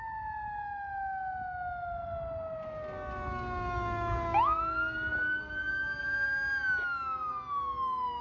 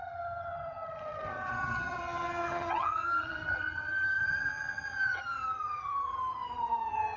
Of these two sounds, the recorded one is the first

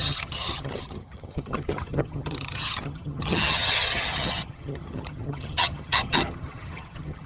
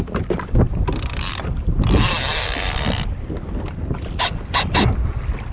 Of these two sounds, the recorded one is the second